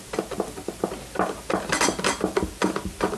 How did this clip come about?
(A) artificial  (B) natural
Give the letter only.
B